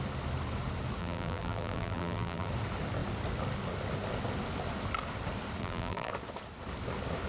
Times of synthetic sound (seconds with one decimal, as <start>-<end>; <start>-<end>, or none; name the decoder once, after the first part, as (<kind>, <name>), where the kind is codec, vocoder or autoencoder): 1.0-2.5 (vocoder, BigVGAN v2); 5.6-6.1